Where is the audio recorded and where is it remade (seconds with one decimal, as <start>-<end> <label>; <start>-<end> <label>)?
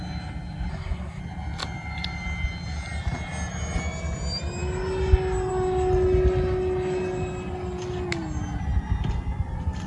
0.0-0.7 recorded; 0.7-1.2 remade; 1.2-9.9 recorded